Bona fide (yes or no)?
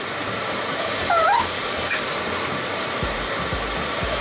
no